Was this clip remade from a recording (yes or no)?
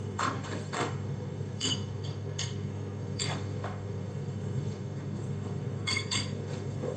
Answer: yes